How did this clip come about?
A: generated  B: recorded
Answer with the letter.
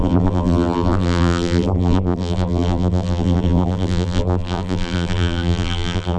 A